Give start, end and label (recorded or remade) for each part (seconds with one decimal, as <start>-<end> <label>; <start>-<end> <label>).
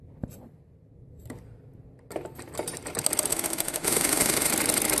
0.0-3.3 recorded; 3.3-4.5 remade; 4.5-5.0 recorded